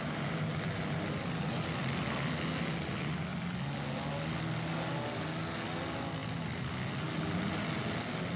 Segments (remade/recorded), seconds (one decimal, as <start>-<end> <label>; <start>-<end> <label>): 0.0-8.4 recorded